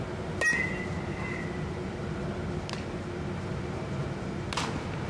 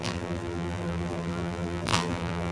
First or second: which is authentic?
first